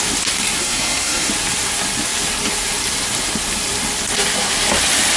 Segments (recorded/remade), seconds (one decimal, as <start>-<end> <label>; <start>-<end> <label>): 0.0-0.6 recorded; 0.6-1.3 remade; 1.3-5.2 recorded